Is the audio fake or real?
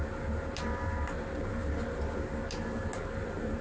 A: real